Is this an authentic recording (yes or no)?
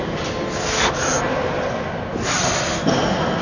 yes